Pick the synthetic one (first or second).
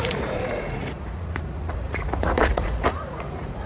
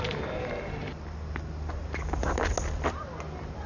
first